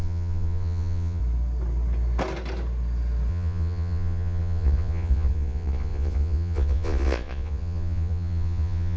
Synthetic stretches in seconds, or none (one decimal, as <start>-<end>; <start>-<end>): 0.0-1.2; 3.3-9.0